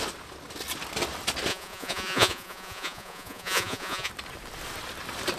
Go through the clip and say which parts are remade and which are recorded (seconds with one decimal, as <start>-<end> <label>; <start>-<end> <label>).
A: 0.0-1.5 recorded; 1.5-4.1 remade; 4.1-5.4 recorded